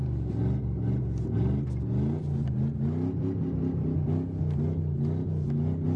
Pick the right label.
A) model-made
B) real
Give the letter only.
B